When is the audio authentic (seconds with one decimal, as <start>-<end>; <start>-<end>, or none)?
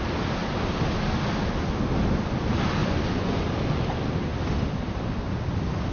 0.0-2.8; 3.4-5.9